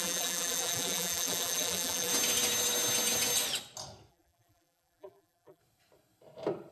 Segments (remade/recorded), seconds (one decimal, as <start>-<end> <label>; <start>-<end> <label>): 0.0-2.1 remade; 2.1-4.1 recorded; 4.1-5.6 remade; 5.6-6.7 recorded